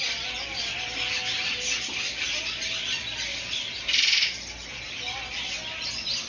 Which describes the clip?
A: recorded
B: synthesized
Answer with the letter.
A